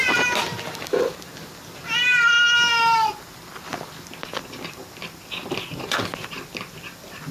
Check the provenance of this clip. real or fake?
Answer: real